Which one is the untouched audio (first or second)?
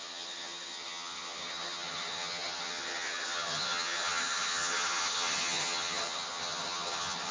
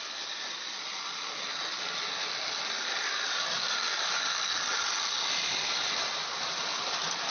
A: second